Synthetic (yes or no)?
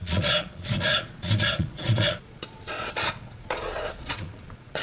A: yes